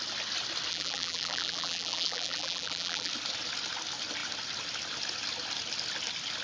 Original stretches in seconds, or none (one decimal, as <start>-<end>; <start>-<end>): 0.0-0.7; 3.1-6.4